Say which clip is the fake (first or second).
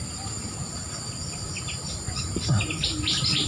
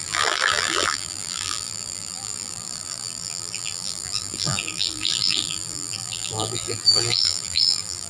second